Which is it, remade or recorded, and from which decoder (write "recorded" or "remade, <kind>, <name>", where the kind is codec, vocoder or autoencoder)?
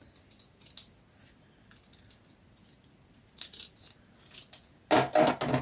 recorded